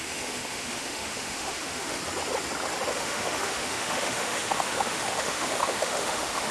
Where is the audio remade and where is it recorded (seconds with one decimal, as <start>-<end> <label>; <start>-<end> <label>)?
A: 0.0-2.0 remade; 2.0-2.9 recorded; 2.9-6.5 remade